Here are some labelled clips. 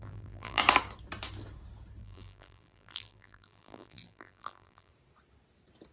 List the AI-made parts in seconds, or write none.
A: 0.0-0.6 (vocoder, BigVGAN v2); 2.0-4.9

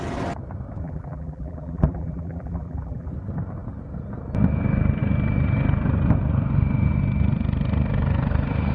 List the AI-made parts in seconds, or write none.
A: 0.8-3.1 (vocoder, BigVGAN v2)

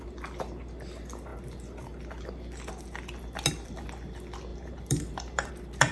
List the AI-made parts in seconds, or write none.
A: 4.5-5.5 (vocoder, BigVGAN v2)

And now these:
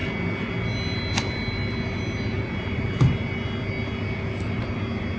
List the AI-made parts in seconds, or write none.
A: none

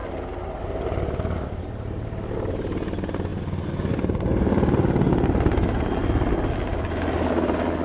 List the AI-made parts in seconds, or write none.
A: none